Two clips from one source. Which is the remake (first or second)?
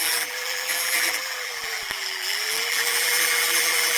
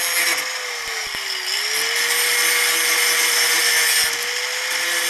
first